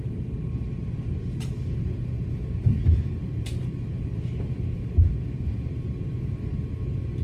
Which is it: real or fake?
fake